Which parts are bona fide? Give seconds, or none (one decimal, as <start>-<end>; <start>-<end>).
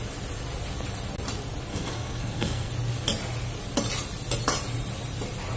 0.0-1.7; 2.7-5.6